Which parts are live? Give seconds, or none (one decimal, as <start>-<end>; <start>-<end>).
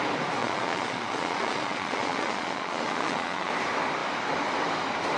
0.0-0.4; 3.5-5.2